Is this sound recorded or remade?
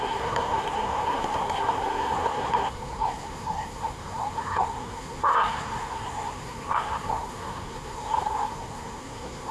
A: remade